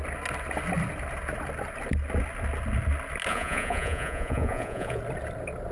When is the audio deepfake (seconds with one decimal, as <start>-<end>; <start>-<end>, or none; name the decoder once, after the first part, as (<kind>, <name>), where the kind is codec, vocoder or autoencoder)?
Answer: 3.3-5.0 (vocoder, Vocos)

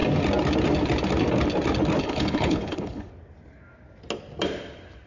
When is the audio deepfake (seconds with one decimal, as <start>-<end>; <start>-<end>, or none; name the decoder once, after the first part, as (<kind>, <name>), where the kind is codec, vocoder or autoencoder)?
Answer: 2.0-3.1 (codec, HILCodec)

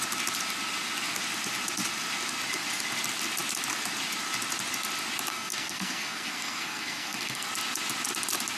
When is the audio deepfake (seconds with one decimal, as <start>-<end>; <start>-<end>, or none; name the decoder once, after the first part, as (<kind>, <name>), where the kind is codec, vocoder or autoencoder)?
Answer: 5.3-7.5 (codec, SNAC)